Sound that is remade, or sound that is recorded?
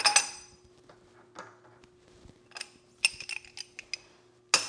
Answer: recorded